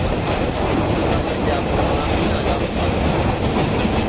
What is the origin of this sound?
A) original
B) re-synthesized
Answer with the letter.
A